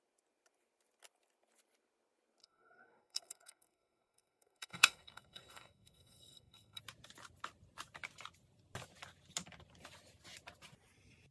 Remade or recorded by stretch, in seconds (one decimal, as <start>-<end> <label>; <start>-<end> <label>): 0.0-2.4 recorded; 2.4-6.8 remade; 6.8-11.3 recorded